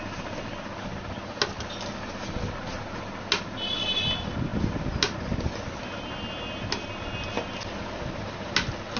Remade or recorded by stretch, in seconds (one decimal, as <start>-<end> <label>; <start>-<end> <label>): 0.0-9.0 recorded